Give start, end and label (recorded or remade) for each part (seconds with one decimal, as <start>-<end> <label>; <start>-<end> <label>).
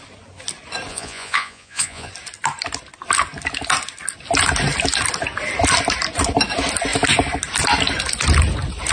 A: 0.0-0.9 recorded; 0.9-2.1 remade; 2.1-8.9 recorded